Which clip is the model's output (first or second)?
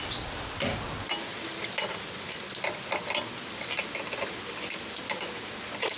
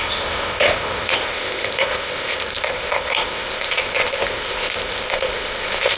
second